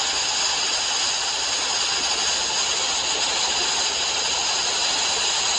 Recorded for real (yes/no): yes